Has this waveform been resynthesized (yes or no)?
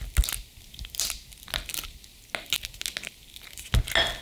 no